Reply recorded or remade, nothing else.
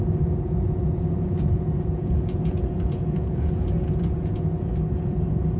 remade